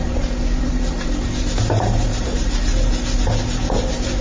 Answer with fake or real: real